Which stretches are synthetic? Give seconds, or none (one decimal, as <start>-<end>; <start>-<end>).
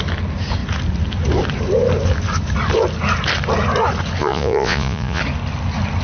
4.2-5.2